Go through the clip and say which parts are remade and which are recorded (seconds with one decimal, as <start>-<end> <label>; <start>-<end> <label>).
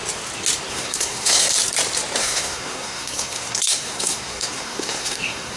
0.0-0.7 recorded; 0.7-1.5 remade; 1.5-2.2 recorded; 2.2-5.6 remade